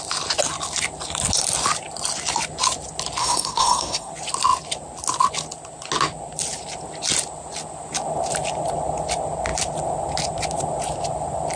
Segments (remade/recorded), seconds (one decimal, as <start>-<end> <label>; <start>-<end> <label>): 0.0-3.2 recorded; 3.2-4.1 remade; 4.1-11.6 recorded